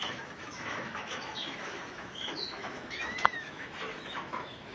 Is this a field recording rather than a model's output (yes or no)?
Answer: no